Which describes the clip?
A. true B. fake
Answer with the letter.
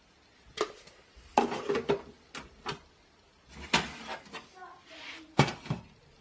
A